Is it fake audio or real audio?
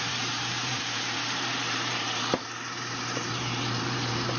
fake